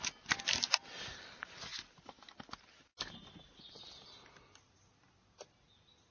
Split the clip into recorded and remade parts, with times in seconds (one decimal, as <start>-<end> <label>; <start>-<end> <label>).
0.0-6.1 recorded

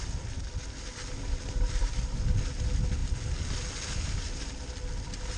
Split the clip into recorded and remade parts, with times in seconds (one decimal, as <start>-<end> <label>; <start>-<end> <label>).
0.0-5.4 recorded

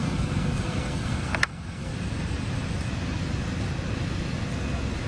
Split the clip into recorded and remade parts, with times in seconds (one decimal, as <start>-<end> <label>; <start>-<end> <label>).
0.0-1.9 remade; 1.9-5.1 recorded